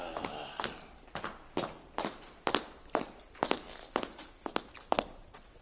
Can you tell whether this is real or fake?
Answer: real